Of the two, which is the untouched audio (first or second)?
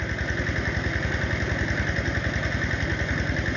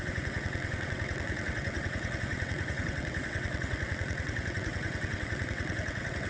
first